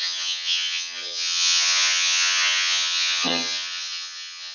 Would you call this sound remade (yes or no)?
yes